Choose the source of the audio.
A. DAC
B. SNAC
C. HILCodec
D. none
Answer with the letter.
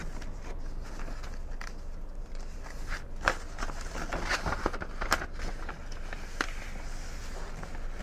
D